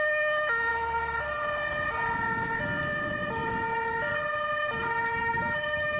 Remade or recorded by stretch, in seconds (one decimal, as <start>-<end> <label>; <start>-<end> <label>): 0.0-5.2 recorded; 5.2-6.0 remade